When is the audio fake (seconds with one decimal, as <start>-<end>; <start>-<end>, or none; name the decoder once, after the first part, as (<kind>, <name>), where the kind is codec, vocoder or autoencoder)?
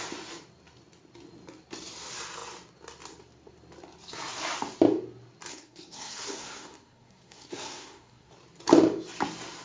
5.5-8.3 (codec, SNAC)